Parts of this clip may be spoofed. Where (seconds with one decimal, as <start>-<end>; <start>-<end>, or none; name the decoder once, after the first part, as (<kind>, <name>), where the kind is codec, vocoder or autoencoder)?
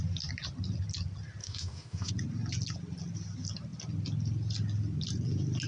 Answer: 1.4-2.1 (autoencoder, DAC-VAE)